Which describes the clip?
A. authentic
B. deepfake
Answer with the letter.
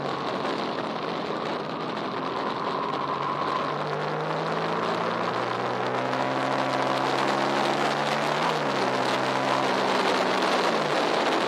A